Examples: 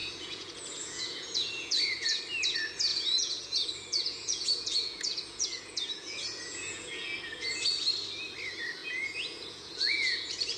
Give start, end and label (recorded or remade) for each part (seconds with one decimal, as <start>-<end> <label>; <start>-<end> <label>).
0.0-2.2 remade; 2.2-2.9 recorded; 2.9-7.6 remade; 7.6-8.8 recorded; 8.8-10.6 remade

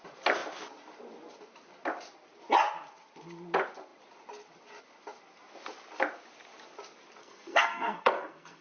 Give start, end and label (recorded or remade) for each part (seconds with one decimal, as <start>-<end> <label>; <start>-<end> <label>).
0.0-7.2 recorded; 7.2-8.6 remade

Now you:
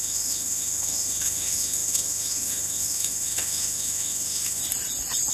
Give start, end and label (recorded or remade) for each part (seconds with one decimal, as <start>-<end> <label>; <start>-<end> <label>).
0.0-4.6 remade; 4.6-5.3 recorded